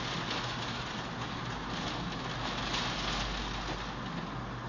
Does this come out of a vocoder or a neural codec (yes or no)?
no